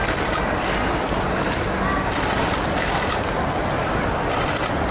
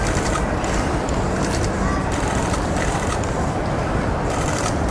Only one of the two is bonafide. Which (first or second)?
first